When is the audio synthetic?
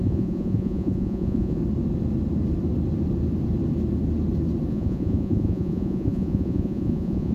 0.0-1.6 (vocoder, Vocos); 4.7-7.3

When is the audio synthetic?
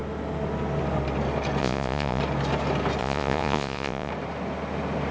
1.6-2.2 (vocoder, Vocos); 3.0-4.1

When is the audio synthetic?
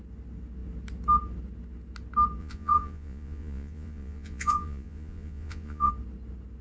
2.4-5.9 (vocoder, Vocos)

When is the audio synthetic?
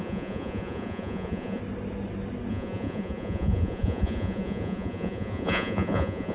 0.0-1.6 (vocoder, Vocos); 2.5-6.3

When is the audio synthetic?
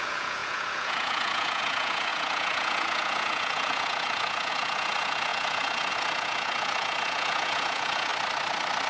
0.0-8.1 (vocoder, Vocos)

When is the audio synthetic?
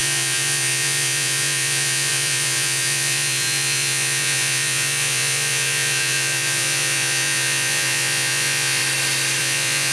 0.0-8.8 (vocoder, Vocos); 9.4-9.9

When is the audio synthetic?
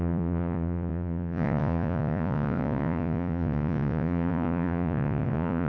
0.0-5.7 (vocoder, Vocos)